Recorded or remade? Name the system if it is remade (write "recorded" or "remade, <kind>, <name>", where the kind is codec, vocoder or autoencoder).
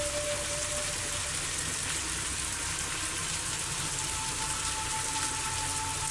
recorded